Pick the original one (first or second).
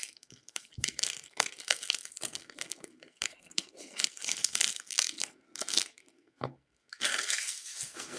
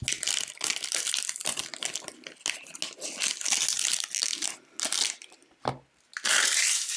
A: second